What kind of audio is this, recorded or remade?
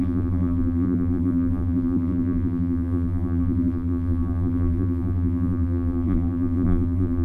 remade